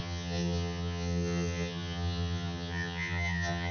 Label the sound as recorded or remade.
remade